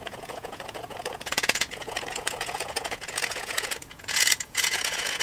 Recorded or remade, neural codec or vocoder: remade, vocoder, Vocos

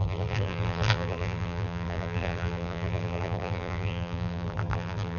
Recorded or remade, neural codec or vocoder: remade, vocoder, BigVGAN v2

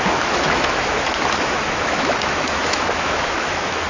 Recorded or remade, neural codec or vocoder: remade, autoencoder, DAC-VAE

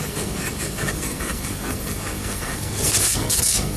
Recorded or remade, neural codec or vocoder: remade, codec, SNAC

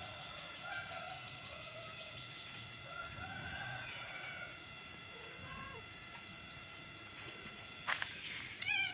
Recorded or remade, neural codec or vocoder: remade, vocoder, Vocos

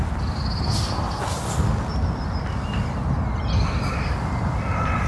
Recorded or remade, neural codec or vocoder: recorded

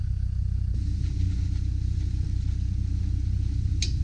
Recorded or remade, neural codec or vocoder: recorded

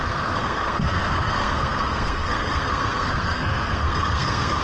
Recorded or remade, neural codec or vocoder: remade, codec, SNAC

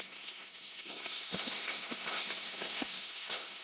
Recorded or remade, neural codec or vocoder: remade, codec, SNAC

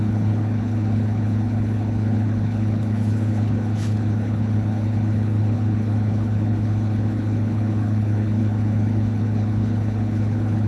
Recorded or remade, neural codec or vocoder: remade, codec, HILCodec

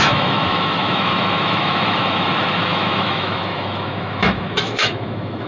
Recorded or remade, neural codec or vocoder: remade, autoencoder, DAC-VAE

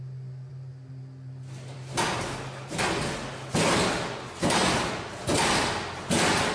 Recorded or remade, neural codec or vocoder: recorded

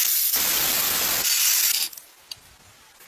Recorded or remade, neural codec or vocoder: recorded